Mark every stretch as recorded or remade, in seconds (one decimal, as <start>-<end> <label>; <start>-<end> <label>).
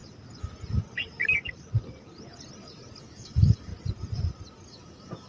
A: 0.0-3.0 recorded; 3.0-3.7 remade; 3.7-4.7 recorded; 4.7-5.3 remade